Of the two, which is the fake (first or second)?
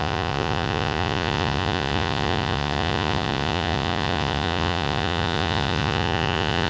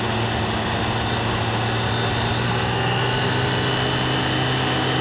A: first